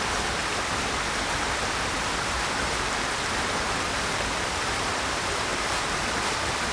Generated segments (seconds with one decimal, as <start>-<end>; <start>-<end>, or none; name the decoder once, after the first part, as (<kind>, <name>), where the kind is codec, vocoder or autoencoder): 0.0-0.4 (vocoder, BigVGAN v2); 4.4-5.5; 6.2-6.7